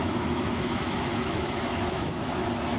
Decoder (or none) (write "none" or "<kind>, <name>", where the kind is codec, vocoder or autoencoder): autoencoder, DAC-VAE